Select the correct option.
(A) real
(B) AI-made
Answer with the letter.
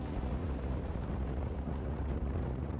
B